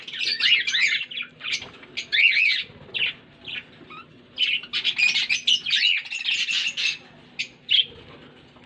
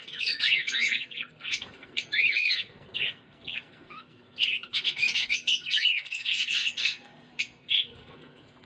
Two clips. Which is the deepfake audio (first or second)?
second